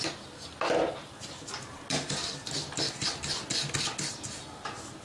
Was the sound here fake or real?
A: real